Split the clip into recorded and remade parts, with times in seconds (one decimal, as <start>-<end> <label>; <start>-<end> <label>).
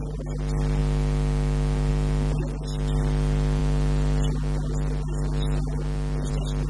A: 0.0-6.7 recorded